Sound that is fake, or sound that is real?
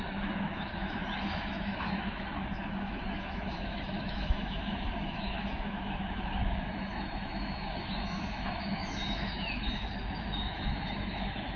fake